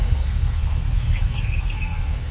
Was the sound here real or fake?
fake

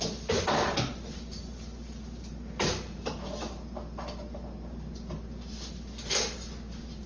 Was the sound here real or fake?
real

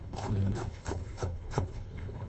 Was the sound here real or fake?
fake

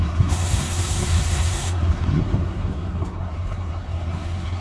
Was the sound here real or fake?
fake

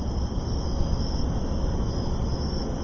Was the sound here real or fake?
real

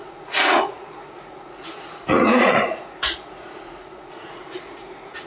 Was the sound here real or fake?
fake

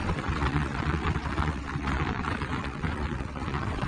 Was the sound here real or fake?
fake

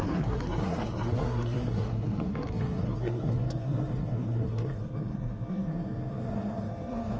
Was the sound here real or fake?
fake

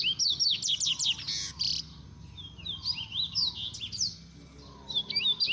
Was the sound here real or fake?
real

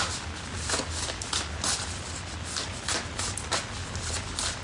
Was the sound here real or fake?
real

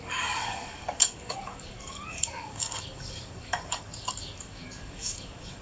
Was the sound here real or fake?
fake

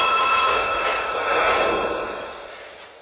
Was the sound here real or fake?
fake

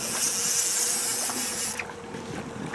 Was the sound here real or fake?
real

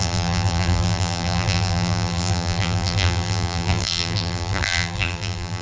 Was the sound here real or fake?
fake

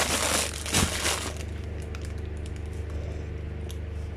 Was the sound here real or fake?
real